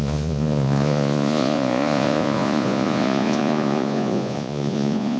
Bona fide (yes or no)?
no